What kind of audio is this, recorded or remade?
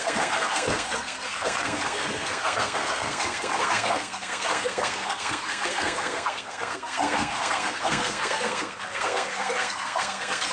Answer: remade